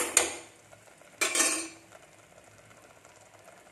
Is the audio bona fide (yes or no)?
yes